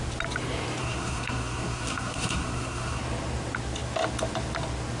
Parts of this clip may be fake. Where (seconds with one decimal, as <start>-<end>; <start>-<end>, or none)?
0.8-3.0